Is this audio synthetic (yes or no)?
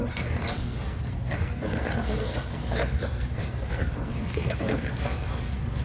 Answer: yes